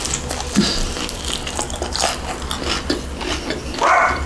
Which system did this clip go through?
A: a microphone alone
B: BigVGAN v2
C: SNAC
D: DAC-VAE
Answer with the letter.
A